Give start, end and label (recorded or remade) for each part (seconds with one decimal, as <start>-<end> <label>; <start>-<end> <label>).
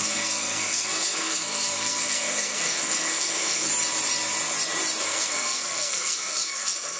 0.0-3.7 remade; 3.7-5.0 recorded; 5.0-7.0 remade